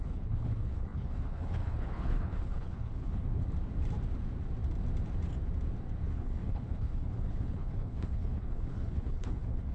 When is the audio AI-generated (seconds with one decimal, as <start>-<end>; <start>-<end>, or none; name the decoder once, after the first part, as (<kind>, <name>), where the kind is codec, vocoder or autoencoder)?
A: 0.0-3.4 (codec, HILCodec); 6.1-9.7